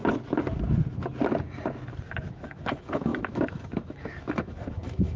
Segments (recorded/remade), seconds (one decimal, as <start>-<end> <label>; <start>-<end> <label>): 0.0-2.3 recorded; 2.3-5.2 remade